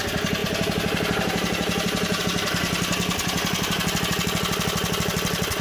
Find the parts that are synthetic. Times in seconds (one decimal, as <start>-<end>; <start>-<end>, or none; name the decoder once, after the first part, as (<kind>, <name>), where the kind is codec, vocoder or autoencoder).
none